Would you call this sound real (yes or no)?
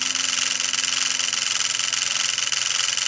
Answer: yes